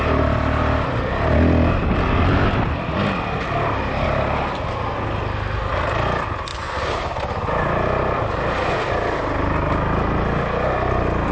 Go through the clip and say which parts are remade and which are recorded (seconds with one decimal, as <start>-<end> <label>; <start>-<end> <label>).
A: 0.0-11.3 recorded